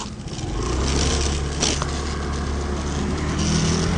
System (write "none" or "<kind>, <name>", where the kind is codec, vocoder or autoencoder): none